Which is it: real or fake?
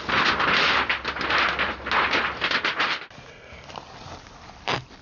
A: real